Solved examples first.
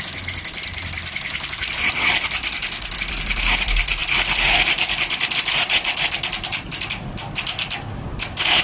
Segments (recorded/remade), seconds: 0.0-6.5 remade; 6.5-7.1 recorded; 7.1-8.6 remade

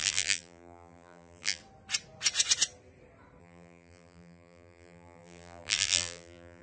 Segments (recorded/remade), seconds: 0.0-1.6 remade; 1.6-3.4 recorded; 3.4-6.6 remade

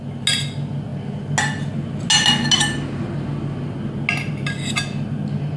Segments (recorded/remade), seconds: 0.0-5.6 recorded

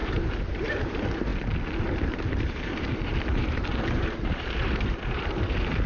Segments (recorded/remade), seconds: 0.0-1.3 remade; 1.3-2.0 recorded; 2.0-5.9 remade

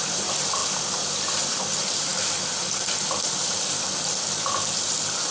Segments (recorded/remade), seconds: 0.0-0.6 remade; 0.6-1.4 recorded; 1.4-5.3 remade

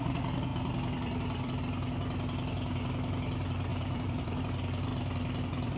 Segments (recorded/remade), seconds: 0.0-0.5 recorded; 0.5-1.6 remade; 1.6-3.7 recorded; 3.7-4.4 remade; 4.4-4.9 recorded; 4.9-5.8 remade

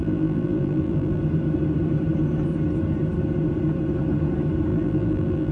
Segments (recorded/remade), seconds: 0.0-1.2 remade; 1.2-4.7 recorded; 4.7-5.5 remade

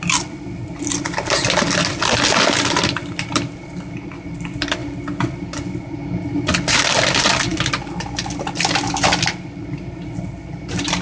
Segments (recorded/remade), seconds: 0.0-4.8 remade; 4.8-6.7 recorded; 6.7-11.0 remade